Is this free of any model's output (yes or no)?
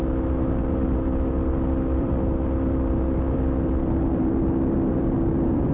no